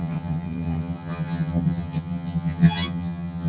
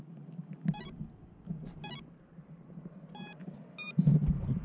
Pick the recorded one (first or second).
second